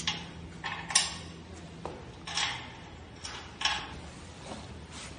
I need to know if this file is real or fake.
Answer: real